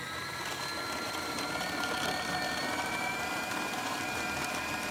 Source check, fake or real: fake